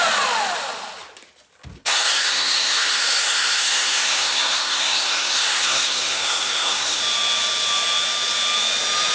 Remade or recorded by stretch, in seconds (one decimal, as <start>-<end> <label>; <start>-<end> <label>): 0.0-1.8 recorded; 1.8-7.0 remade; 7.0-9.1 recorded